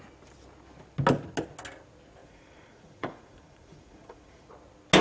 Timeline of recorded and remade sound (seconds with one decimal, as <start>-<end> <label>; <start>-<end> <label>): 0.0-2.2 recorded; 2.2-4.5 remade; 4.5-5.0 recorded

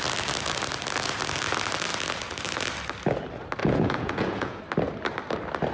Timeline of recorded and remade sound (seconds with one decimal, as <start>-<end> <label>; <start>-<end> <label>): 0.0-3.6 recorded; 3.6-4.6 remade; 4.6-5.7 recorded

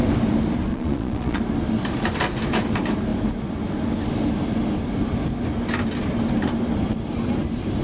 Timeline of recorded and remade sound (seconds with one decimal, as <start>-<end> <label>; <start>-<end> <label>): 0.0-0.7 recorded; 0.7-1.4 remade; 1.4-7.8 recorded

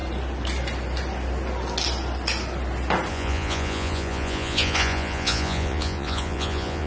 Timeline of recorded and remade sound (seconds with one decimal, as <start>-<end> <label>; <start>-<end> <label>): 0.0-3.1 recorded; 3.1-6.9 remade

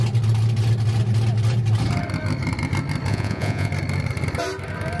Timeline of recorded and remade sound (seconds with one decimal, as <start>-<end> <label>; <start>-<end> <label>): 0.0-3.1 recorded; 3.1-3.7 remade; 3.7-5.0 recorded